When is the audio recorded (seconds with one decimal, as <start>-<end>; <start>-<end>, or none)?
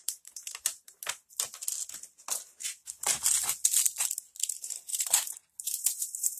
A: 1.0-4.4